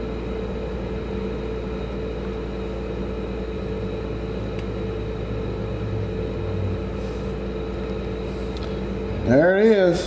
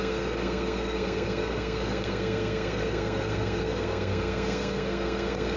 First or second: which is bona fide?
first